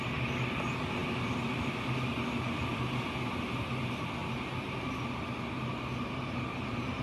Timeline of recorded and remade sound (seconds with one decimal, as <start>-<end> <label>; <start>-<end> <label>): 0.0-7.0 recorded